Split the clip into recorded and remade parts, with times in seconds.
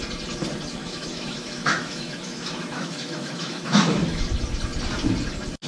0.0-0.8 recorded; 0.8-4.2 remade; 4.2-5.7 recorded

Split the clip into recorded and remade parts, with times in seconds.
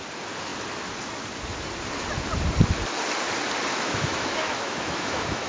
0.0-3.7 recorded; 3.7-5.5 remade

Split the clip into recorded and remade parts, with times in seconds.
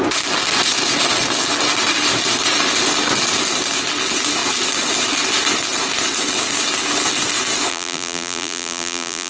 0.0-7.7 recorded; 7.7-9.3 remade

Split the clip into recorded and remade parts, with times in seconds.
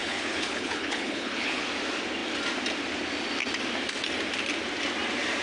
0.0-1.6 remade; 1.6-5.4 recorded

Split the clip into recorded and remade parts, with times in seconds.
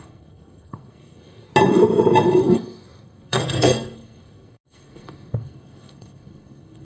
0.0-1.5 remade; 1.5-2.4 recorded; 2.4-6.8 remade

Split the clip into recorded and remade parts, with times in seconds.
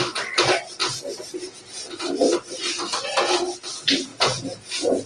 0.0-0.8 recorded; 0.8-2.0 remade; 2.0-4.1 recorded; 4.1-5.1 remade